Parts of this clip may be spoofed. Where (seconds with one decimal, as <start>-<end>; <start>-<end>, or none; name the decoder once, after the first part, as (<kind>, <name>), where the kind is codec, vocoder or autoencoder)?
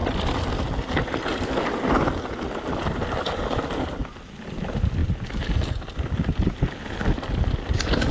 none